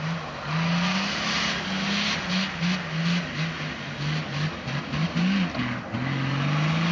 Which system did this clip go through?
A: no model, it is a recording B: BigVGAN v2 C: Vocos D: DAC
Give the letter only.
A